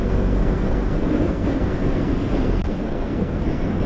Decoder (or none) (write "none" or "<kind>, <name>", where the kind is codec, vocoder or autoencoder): codec, SNAC